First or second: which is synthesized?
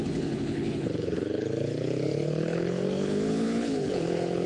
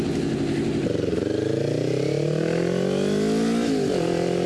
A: first